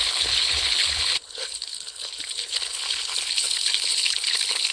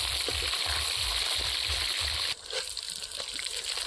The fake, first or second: first